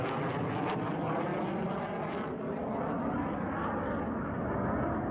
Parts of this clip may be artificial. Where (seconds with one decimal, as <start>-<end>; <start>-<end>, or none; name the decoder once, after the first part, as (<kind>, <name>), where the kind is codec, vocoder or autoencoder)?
none